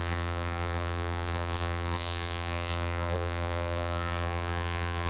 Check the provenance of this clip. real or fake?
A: fake